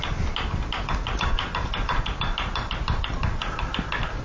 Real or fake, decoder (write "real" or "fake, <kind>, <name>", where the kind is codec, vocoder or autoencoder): real